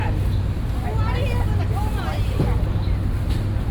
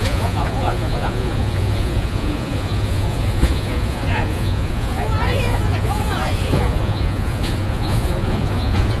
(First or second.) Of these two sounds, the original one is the first